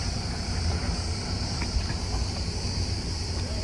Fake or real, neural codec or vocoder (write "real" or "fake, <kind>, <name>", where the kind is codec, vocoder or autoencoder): real